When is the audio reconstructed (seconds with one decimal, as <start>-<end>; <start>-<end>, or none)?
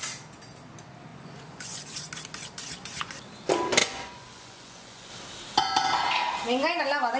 1.1-2.1; 2.6-3.1; 3.8-5.1